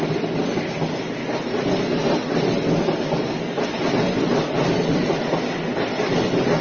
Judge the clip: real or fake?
real